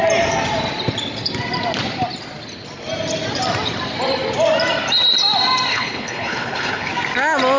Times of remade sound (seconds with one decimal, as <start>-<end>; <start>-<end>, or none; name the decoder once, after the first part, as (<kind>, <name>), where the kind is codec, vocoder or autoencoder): 5.7-6.9 (codec, HILCodec)